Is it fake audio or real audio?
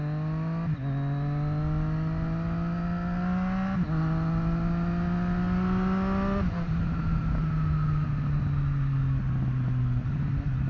real